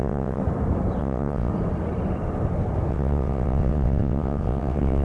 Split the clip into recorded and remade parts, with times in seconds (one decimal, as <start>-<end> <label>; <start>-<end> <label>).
0.0-0.4 remade; 0.4-1.0 recorded; 1.0-1.5 remade; 1.5-2.9 recorded; 2.9-5.0 remade